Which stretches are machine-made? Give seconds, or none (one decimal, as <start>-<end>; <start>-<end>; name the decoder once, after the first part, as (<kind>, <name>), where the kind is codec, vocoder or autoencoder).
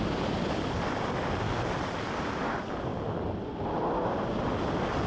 none